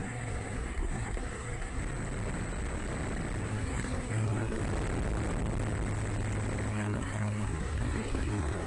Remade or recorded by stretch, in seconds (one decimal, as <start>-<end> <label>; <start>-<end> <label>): 0.0-1.8 remade; 1.8-3.5 recorded; 3.5-4.6 remade; 4.6-6.7 recorded; 6.7-8.7 remade